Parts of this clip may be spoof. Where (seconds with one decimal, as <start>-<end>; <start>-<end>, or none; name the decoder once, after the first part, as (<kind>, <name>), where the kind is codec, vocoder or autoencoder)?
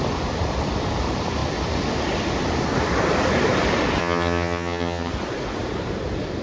4.0-5.1 (vocoder, HiFi-GAN)